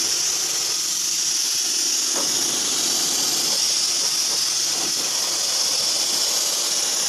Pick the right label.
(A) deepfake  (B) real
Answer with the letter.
B